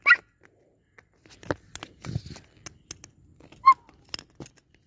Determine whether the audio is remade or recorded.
recorded